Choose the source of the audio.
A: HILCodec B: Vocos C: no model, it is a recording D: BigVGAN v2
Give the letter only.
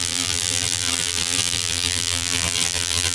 D